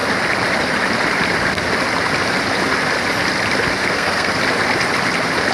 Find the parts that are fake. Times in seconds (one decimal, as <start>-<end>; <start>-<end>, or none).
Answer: 3.8-4.3